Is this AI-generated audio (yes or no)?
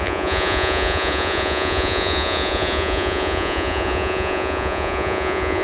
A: yes